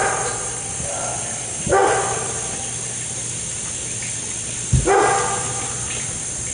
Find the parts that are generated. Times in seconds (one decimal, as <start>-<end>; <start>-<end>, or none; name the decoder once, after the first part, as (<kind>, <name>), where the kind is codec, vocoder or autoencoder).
none